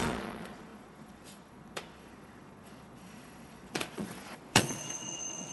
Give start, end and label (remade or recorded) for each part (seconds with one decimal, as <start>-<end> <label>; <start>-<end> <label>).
0.0-5.5 remade

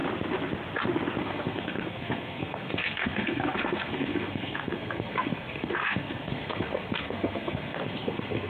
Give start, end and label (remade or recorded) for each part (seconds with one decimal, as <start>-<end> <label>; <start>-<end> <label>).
0.0-1.2 recorded; 1.2-8.5 remade

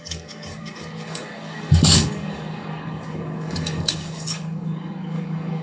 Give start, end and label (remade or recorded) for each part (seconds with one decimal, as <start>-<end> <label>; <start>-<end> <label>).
0.0-5.6 remade

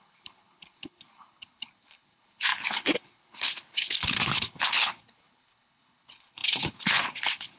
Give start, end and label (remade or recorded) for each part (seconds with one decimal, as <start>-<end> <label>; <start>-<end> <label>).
0.0-7.6 remade

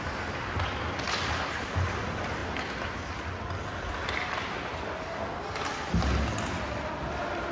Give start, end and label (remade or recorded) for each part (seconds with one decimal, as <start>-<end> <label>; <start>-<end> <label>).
0.0-7.5 recorded

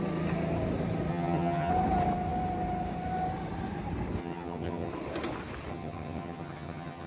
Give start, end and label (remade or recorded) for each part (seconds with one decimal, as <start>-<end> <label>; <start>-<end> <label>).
0.0-1.1 recorded; 1.1-1.7 remade; 1.7-4.2 recorded; 4.2-4.9 remade; 4.9-5.7 recorded; 5.7-7.1 remade

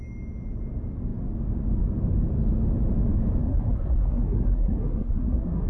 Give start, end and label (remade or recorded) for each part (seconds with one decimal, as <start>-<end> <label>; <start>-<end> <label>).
0.0-3.4 recorded; 3.4-5.7 remade

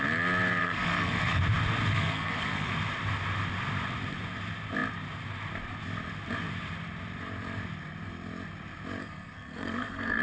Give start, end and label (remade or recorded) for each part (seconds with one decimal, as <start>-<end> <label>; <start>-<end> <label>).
0.0-0.6 recorded; 0.6-1.4 remade; 1.4-1.9 recorded; 1.9-2.7 remade; 2.7-9.0 recorded; 9.0-10.2 remade